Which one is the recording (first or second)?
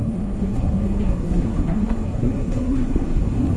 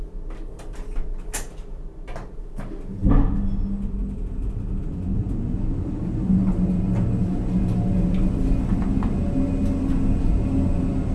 second